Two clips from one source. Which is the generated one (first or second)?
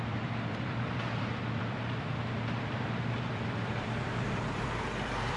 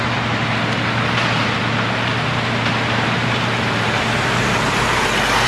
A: first